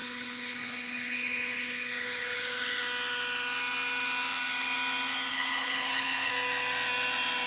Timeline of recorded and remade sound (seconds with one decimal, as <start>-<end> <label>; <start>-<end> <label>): 0.0-2.8 remade; 2.8-5.3 recorded; 5.3-6.3 remade; 6.3-7.5 recorded